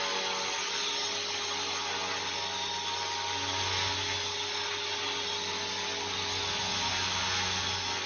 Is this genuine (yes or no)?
yes